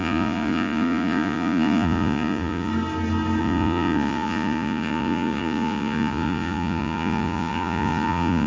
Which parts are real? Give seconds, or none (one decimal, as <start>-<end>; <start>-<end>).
2.7-3.4